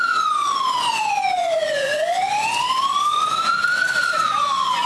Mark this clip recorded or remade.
remade